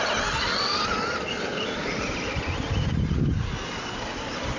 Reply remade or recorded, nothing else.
recorded